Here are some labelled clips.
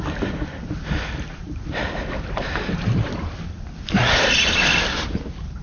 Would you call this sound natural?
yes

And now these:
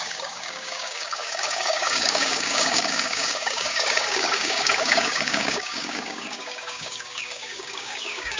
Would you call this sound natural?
no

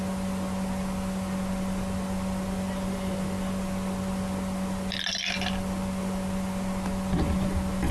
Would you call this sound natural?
yes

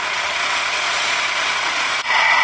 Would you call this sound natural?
no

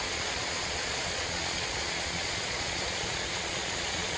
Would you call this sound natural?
no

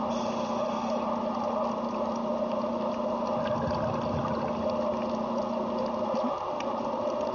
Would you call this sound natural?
yes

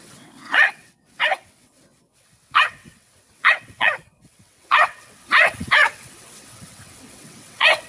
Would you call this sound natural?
no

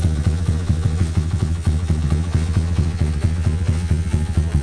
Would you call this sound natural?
no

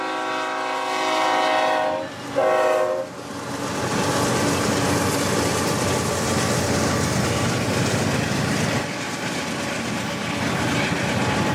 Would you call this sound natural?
yes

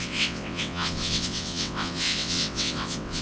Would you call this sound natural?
no